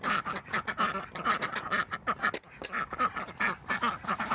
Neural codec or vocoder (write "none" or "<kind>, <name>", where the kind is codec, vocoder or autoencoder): none